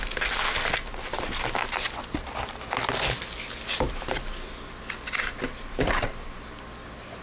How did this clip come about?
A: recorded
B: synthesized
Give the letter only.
A